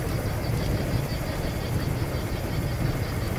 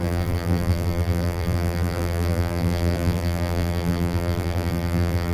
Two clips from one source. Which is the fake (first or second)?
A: second